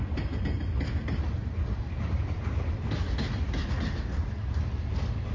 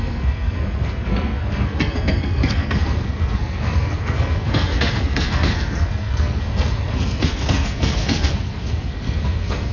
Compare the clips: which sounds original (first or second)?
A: first